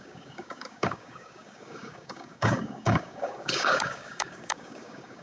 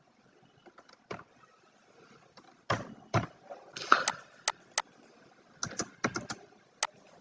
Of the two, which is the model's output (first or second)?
first